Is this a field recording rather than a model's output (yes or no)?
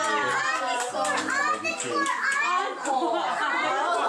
yes